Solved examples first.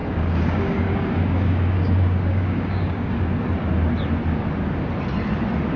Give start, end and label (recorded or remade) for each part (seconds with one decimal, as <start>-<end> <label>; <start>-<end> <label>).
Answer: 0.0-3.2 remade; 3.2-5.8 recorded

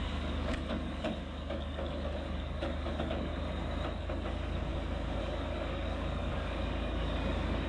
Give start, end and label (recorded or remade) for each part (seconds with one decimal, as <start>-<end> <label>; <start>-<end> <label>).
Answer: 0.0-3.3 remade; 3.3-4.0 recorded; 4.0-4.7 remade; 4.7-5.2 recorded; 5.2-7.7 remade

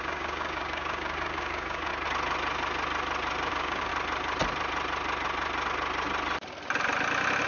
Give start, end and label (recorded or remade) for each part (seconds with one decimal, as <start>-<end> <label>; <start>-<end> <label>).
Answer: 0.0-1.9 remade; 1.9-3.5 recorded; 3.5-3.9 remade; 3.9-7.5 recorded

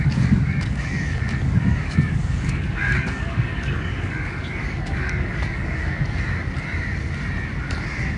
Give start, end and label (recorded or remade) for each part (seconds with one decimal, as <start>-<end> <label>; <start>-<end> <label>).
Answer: 0.0-6.4 remade; 6.4-8.2 recorded

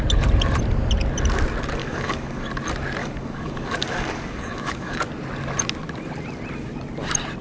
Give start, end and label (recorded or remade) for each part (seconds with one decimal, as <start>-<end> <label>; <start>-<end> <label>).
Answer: 0.0-1.8 recorded; 1.8-2.5 remade; 2.5-3.0 recorded; 3.0-5.0 remade; 5.0-7.4 recorded

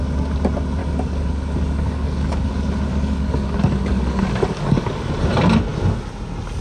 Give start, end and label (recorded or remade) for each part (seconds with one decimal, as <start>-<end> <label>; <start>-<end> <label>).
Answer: 0.0-0.8 recorded; 0.8-2.5 remade; 2.5-2.9 recorded; 2.9-5.1 remade; 5.1-6.6 recorded